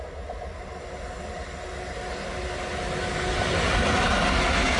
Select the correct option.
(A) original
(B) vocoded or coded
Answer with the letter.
A